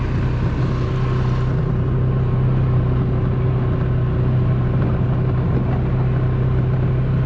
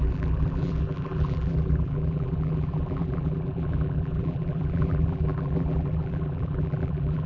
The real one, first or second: first